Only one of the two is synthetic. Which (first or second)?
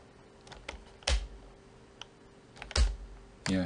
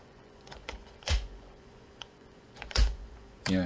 second